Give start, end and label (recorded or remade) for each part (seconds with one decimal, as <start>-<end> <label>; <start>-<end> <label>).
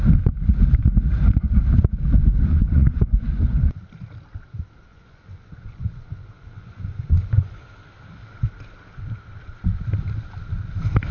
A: 0.0-2.2 recorded; 2.2-3.8 remade; 3.8-4.9 recorded; 4.9-7.6 remade; 7.6-11.1 recorded